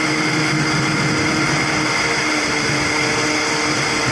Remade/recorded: recorded